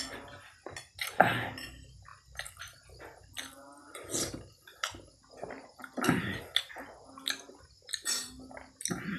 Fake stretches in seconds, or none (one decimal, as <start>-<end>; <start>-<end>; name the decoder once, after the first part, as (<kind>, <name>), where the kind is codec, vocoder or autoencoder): none

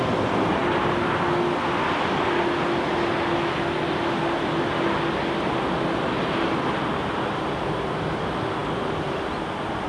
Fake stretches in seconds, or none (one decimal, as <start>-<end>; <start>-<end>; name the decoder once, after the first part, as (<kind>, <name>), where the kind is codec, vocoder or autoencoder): none

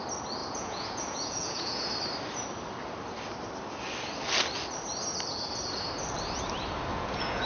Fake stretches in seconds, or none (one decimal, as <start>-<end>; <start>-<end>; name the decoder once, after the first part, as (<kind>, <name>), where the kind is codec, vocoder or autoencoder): 0.4-1.9 (vocoder, Vocos); 6.9-7.5

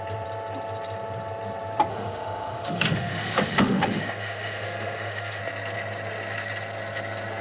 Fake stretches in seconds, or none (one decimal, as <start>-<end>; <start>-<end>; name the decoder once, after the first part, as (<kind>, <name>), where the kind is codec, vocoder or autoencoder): 1.9-5.4 (autoencoder, DAC-VAE)

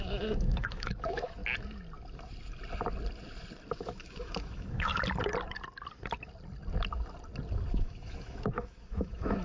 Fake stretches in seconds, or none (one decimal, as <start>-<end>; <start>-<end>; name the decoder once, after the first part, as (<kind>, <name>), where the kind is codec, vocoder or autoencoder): 0.0-1.4 (autoencoder, DAC-VAE); 3.7-4.9; 7.7-9.4

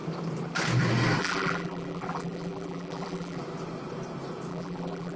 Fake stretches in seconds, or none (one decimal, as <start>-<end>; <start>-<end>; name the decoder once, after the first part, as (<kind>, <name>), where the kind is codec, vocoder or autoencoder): 1.2-3.4 (vocoder, BigVGAN v2); 4.5-5.2